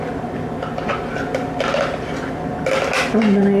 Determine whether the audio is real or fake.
real